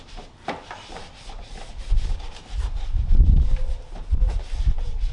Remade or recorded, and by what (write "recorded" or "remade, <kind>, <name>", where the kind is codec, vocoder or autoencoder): recorded